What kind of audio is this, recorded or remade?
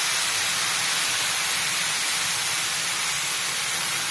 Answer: remade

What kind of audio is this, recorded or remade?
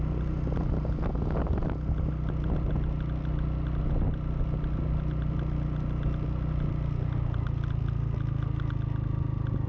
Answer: recorded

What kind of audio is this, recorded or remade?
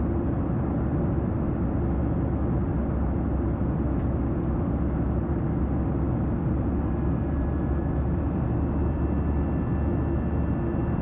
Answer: recorded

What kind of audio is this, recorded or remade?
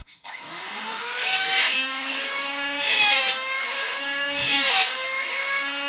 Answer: remade